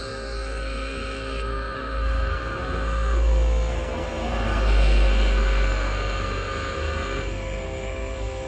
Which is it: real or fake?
fake